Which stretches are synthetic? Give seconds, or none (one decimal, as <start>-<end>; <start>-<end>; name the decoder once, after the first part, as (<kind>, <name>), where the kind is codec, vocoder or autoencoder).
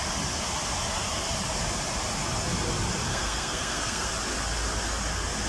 3.1-4.1 (codec, SNAC)